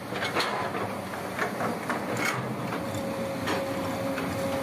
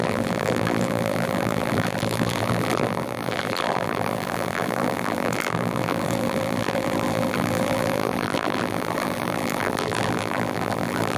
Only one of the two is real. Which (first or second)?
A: first